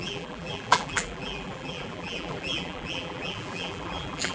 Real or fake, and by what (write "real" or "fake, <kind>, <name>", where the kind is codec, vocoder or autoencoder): fake, vocoder, BigVGAN v2